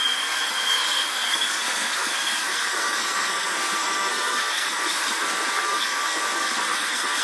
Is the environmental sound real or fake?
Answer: fake